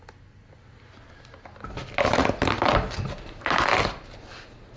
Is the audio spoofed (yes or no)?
no